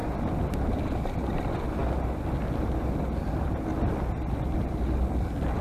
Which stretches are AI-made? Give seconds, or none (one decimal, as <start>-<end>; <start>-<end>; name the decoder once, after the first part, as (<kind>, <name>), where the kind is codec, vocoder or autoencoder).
none